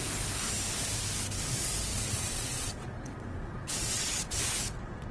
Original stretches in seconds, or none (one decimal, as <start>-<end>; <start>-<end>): 0.0-1.9; 4.2-5.1